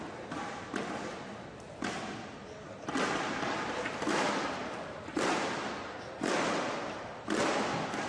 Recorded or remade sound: recorded